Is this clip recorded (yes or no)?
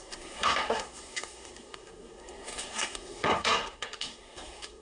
no